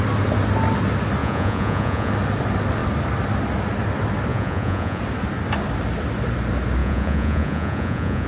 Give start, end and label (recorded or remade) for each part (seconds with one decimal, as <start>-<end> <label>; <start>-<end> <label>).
0.0-1.2 recorded; 1.2-2.1 remade; 2.1-4.3 recorded; 4.3-5.0 remade; 5.0-6.8 recorded; 6.8-8.3 remade